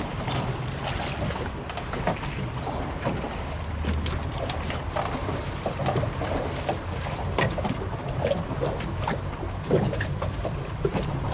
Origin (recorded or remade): recorded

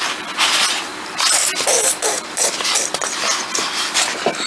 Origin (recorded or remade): recorded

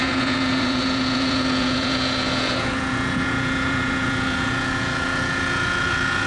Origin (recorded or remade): remade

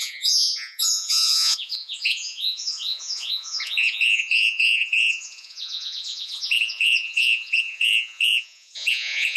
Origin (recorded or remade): remade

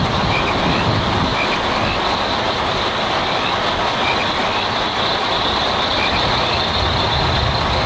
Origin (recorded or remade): recorded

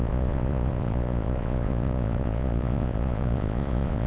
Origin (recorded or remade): remade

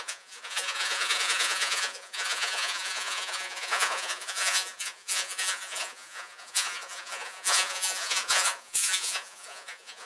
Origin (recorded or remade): remade